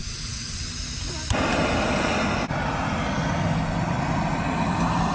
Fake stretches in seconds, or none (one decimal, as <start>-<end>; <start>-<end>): 0.0-0.6